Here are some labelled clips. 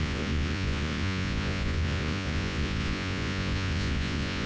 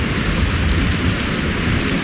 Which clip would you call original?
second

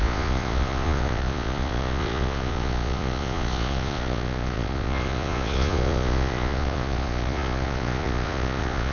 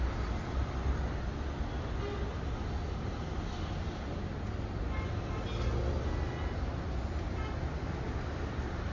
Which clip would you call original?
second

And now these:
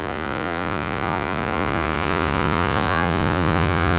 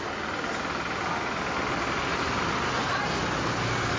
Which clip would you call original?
second